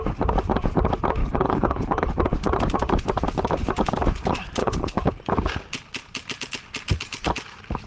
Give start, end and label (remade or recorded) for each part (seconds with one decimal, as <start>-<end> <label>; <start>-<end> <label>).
0.0-1.2 recorded; 1.2-2.1 remade; 2.1-4.6 recorded; 4.6-5.2 remade; 5.2-7.9 recorded